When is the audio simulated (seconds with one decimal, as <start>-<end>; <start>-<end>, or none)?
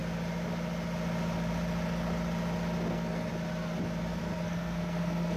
2.9-3.3; 4.2-5.4